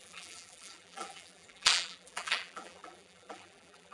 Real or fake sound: fake